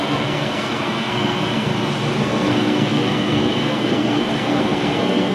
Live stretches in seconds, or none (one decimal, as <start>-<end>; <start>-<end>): 1.7-2.2